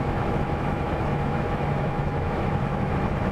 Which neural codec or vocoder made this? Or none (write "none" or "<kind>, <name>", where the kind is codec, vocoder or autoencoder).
autoencoder, DAC-VAE